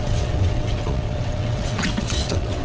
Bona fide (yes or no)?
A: no